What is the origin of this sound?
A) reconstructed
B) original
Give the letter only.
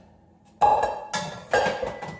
B